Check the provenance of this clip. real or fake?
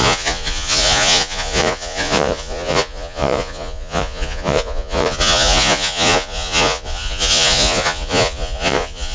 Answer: fake